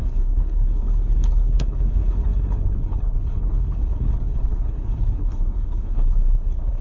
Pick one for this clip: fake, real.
fake